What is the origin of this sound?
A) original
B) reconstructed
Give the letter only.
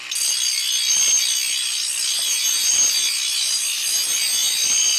A